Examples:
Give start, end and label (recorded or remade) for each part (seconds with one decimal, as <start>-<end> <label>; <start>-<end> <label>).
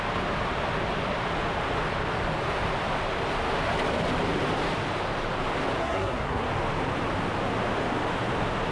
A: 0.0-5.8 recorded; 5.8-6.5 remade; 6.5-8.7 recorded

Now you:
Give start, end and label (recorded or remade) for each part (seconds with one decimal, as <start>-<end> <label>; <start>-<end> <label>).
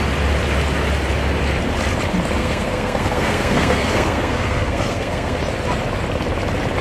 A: 0.0-2.4 recorded; 2.4-5.4 remade; 5.4-6.8 recorded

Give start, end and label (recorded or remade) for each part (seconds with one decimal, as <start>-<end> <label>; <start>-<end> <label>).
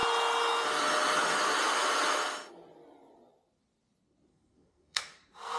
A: 0.0-4.3 recorded; 4.3-5.6 remade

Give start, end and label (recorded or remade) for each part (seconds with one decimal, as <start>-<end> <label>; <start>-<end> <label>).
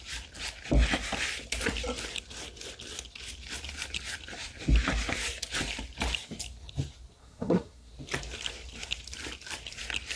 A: 0.0-7.2 recorded; 7.2-7.9 remade; 7.9-10.2 recorded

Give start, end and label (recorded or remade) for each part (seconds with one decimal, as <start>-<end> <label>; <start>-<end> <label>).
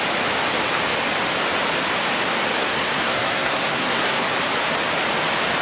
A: 0.0-2.6 recorded; 2.6-4.3 remade; 4.3-5.6 recorded